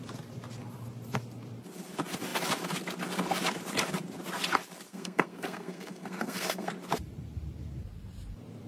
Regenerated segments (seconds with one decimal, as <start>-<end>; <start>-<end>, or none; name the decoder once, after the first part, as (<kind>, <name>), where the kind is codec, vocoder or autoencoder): 4.9-6.7 (codec, SNAC)